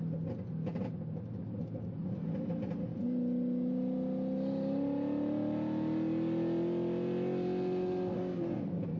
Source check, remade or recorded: recorded